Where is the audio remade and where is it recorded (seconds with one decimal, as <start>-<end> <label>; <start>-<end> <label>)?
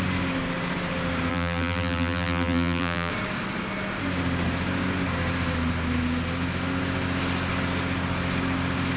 0.0-1.3 recorded; 1.3-3.1 remade; 3.1-9.0 recorded